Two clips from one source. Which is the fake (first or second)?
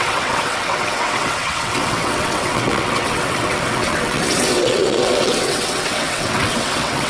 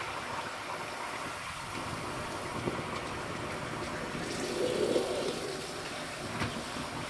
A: first